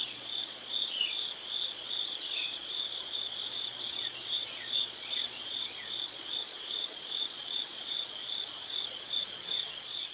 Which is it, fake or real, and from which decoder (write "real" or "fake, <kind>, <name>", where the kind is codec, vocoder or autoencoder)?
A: fake, vocoder, Vocos